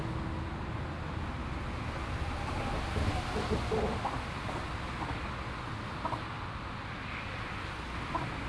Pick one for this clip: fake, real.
real